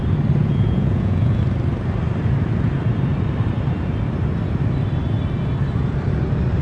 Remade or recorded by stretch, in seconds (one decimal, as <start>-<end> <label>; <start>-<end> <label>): 0.0-0.4 recorded; 0.4-1.4 remade; 1.4-6.6 recorded